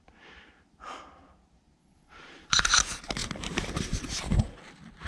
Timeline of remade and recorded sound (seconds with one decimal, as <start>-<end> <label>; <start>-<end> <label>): 0.0-1.8 recorded; 1.8-2.6 remade; 2.6-5.1 recorded